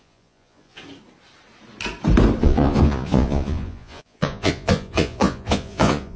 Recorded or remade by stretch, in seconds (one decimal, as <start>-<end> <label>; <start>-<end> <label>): 0.0-0.8 remade; 0.8-2.4 recorded; 2.4-6.2 remade